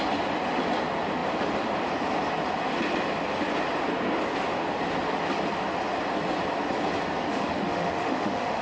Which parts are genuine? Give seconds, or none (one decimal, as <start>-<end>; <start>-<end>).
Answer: 0.0-7.3

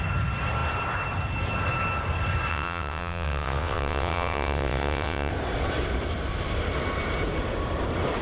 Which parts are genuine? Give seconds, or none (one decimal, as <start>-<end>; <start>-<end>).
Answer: 0.0-2.5; 5.3-8.2

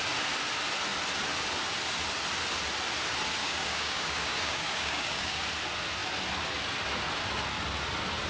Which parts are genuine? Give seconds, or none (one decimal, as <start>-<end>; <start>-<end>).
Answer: 0.0-3.4; 5.4-8.3

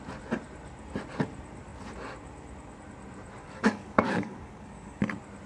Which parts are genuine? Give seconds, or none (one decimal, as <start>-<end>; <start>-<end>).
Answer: 0.0-3.4; 5.0-5.5

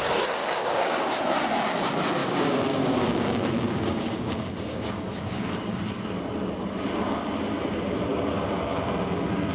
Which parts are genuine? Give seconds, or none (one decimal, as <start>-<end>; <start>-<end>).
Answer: 0.0-0.4; 1.2-2.2; 5.8-9.5

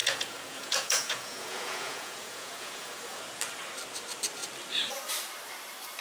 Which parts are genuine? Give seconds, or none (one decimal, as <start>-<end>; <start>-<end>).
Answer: 3.2-6.0

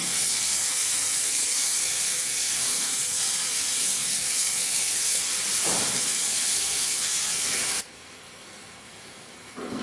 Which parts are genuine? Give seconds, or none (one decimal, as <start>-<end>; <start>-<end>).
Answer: 5.3-5.9

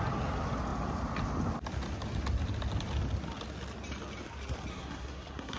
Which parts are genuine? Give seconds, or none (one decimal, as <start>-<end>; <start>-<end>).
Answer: 0.0-4.7